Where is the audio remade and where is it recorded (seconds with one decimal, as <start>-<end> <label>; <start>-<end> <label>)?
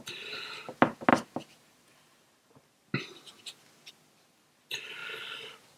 0.0-5.8 recorded